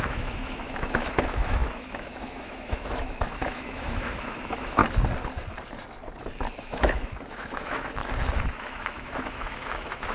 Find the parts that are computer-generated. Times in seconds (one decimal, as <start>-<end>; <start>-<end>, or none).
0.0-4.8; 6.6-8.0; 8.5-10.1